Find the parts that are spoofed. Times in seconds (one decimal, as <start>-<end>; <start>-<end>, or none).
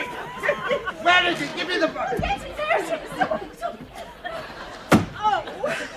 none